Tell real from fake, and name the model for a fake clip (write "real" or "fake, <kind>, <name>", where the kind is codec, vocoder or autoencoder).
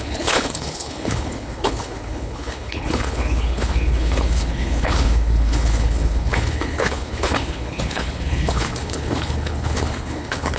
fake, codec, HILCodec